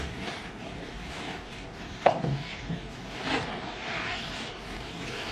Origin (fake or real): fake